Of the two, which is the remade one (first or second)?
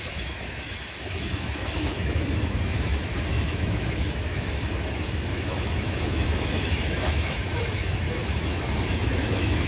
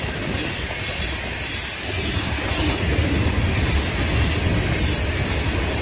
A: first